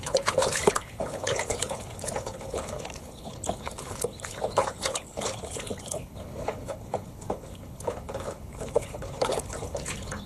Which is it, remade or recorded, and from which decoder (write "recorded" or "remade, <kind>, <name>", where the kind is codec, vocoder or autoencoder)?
remade, codec, HILCodec